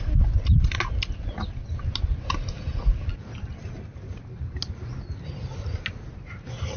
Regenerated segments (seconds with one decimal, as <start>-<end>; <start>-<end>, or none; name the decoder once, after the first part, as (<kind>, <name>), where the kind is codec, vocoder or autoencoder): none